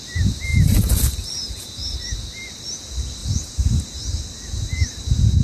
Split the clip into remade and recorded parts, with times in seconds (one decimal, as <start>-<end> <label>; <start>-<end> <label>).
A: 0.0-0.5 recorded; 0.5-2.0 remade; 2.0-3.2 recorded; 3.2-3.8 remade; 3.8-5.4 recorded